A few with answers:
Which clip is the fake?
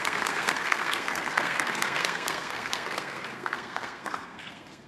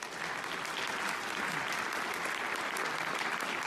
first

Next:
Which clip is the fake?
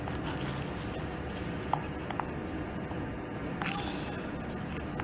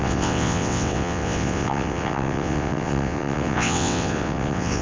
second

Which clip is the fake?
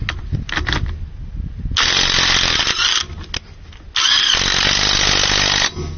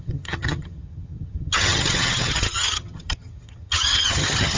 second